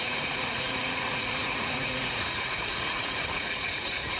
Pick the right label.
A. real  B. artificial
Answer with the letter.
B